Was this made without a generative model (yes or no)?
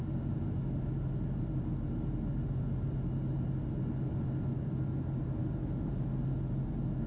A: yes